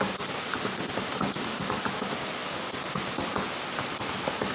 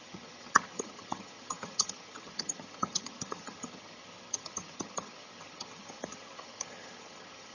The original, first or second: first